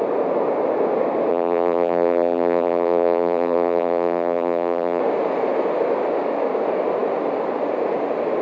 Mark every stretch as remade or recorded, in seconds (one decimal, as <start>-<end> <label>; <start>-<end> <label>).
0.0-1.3 recorded; 1.3-5.0 remade; 5.0-8.4 recorded